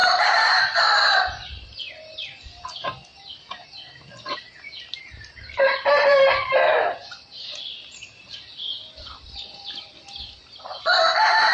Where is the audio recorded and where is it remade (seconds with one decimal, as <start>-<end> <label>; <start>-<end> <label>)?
0.0-1.9 remade; 1.9-3.1 recorded; 3.1-8.0 remade; 8.0-11.5 recorded